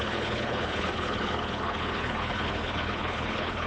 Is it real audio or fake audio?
fake